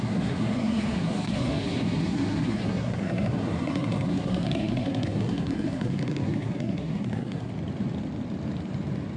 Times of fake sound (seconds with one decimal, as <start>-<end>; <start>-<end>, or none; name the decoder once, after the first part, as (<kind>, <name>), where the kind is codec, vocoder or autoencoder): 0.0-7.5 (codec, SNAC)